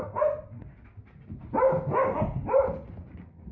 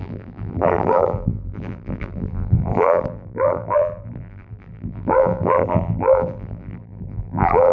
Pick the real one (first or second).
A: first